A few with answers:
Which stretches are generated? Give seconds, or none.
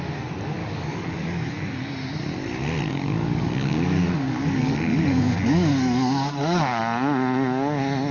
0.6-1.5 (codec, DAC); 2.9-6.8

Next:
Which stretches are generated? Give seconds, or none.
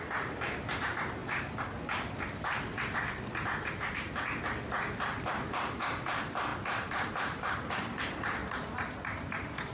0.0-1.2 (vocoder, BigVGAN v2); 5.2-8.4; 8.9-9.7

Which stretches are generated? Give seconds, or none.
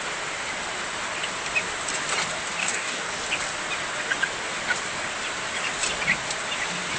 2.6-3.1 (codec, DAC)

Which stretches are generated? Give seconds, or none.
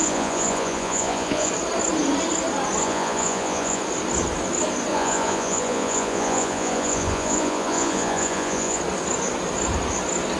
0.0-1.5 (vocoder, Vocos); 2.8-3.8; 4.9-8.8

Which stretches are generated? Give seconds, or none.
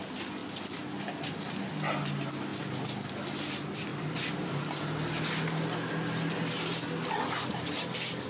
none